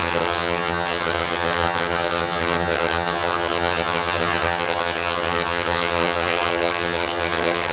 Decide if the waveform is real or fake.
fake